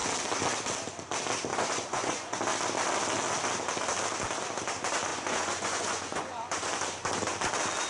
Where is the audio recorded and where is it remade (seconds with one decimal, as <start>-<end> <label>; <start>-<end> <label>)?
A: 0.0-1.5 recorded; 1.5-2.4 remade; 2.4-5.1 recorded; 5.1-6.7 remade; 6.7-7.9 recorded